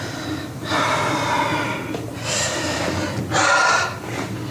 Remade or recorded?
recorded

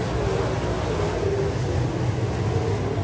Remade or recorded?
recorded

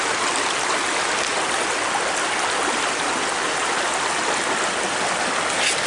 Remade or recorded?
recorded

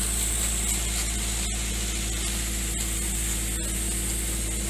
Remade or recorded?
recorded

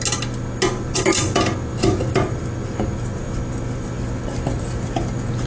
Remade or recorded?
recorded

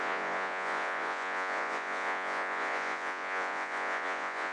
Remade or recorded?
remade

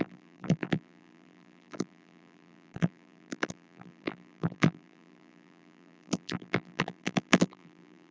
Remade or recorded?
remade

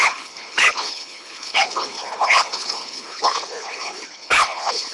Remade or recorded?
remade